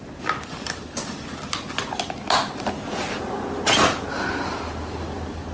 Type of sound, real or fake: real